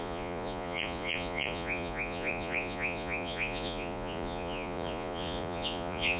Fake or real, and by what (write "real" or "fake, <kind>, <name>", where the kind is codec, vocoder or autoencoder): fake, vocoder, Vocos